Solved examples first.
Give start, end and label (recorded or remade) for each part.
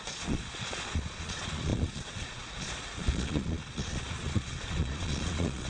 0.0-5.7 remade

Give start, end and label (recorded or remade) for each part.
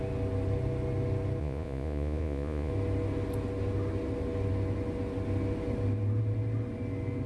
0.0-1.4 recorded; 1.4-2.7 remade; 2.7-7.3 recorded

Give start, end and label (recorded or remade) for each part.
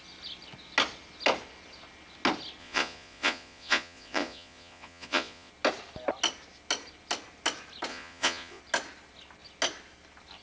0.0-2.6 recorded; 2.6-5.5 remade; 5.5-7.9 recorded; 7.9-8.6 remade; 8.6-10.4 recorded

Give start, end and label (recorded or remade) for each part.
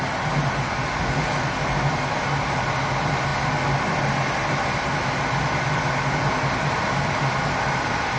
0.0-8.2 recorded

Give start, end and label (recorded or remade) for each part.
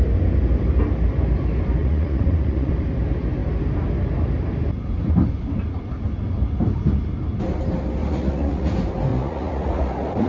0.0-1.8 recorded; 1.8-2.7 remade; 2.7-8.0 recorded; 8.0-8.7 remade; 8.7-9.1 recorded; 9.1-10.3 remade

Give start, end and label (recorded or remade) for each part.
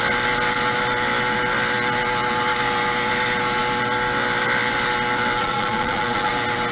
0.0-5.4 recorded; 5.4-6.3 remade; 6.3-6.7 recorded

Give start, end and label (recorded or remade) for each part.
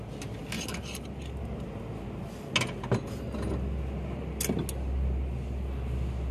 0.0-6.3 recorded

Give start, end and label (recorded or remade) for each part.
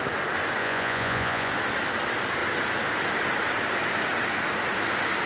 0.0-0.6 recorded; 0.6-1.5 remade; 1.5-5.3 recorded